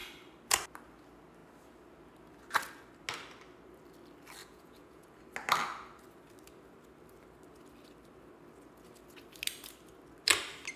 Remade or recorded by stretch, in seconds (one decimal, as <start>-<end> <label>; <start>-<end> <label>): 0.0-4.4 recorded; 4.4-5.2 remade; 5.2-10.8 recorded